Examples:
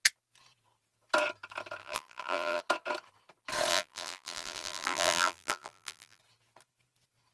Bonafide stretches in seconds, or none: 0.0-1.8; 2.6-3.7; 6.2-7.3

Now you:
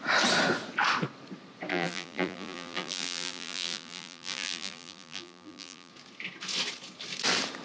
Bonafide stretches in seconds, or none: 0.0-1.7; 5.9-7.6

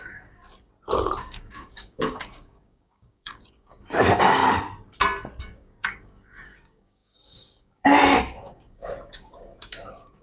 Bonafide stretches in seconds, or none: 0.4-1.2; 4.4-5.4

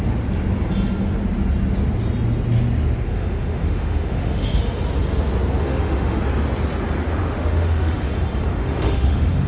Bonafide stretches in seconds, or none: 0.0-3.1; 4.8-5.6; 6.2-7.2; 8.1-8.5

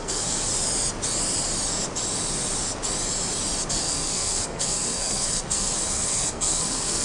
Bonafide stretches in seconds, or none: 0.5-3.7